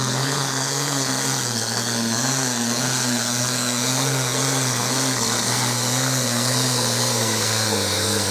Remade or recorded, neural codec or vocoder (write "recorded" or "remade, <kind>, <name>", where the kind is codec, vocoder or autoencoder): remade, codec, SNAC